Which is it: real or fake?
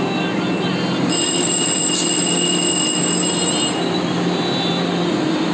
real